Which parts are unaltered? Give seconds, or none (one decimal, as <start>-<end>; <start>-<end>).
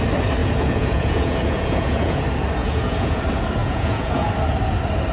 0.0-0.4; 2.2-2.6; 3.2-3.6; 4.3-5.1